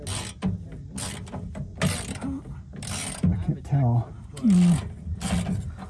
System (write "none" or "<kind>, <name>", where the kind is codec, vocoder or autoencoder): none